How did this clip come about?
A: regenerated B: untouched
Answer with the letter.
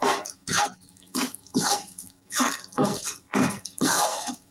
A